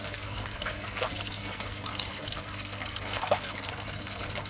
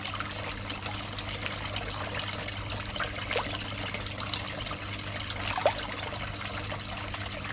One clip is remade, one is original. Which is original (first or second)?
second